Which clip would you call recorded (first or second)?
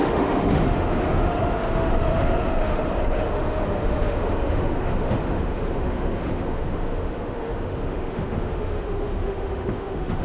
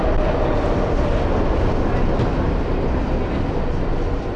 second